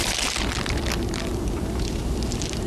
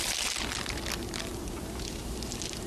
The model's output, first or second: first